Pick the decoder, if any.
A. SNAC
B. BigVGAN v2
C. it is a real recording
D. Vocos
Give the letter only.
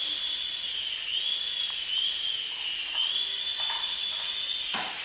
C